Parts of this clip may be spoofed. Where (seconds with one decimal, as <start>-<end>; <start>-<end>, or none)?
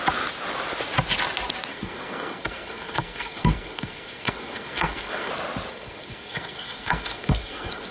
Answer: 1.7-5.3; 5.7-7.9